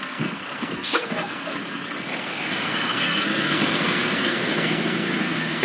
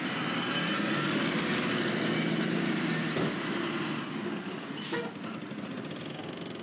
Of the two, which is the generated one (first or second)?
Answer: first